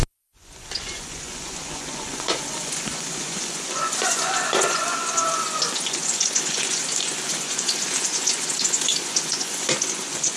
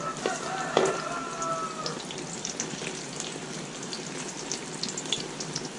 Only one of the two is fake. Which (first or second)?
first